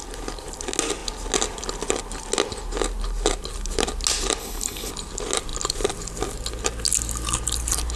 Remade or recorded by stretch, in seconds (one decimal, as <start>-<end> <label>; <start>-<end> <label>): 0.0-4.4 recorded; 4.4-4.9 remade; 4.9-8.0 recorded